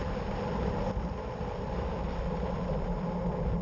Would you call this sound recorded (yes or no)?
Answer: yes